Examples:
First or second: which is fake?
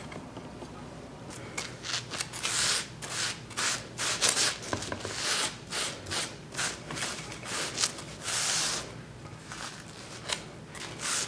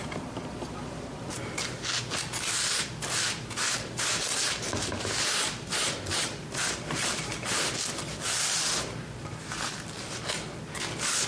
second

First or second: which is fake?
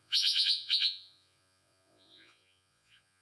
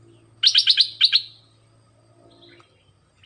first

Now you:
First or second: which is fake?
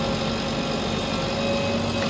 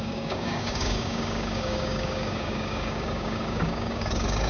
second